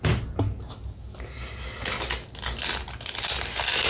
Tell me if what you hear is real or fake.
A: real